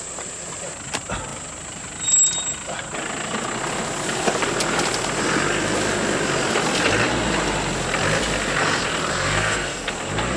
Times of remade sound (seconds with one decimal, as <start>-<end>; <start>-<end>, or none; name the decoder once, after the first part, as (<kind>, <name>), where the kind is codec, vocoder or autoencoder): 9.1-9.9 (codec, SNAC)